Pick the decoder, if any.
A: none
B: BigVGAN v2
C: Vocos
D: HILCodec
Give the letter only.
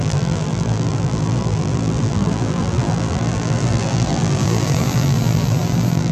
B